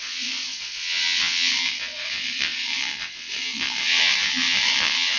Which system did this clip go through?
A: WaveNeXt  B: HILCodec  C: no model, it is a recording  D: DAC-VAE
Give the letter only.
A